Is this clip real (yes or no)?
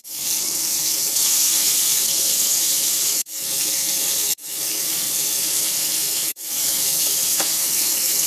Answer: no